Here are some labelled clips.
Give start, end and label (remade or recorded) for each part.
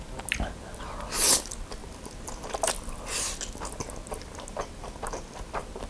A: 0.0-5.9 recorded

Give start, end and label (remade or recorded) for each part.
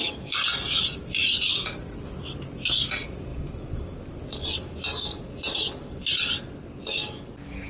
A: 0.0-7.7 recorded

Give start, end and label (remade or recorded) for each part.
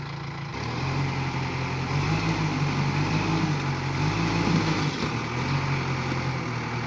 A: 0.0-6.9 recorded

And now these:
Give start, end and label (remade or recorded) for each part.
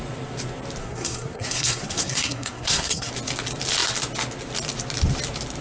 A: 0.0-0.8 recorded; 0.8-3.1 remade; 3.1-5.6 recorded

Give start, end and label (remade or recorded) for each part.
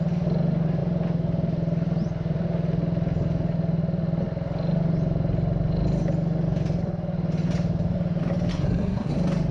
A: 0.0-8.5 recorded; 8.5-9.1 remade; 9.1-9.5 recorded